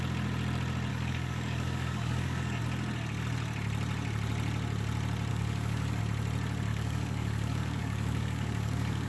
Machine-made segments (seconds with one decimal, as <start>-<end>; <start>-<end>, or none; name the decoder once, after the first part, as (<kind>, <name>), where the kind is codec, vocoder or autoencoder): 0.9-2.6 (codec, DAC); 5.3-6.0; 6.7-9.1